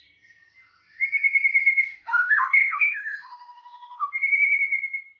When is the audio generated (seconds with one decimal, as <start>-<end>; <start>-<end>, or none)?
1.6-4.1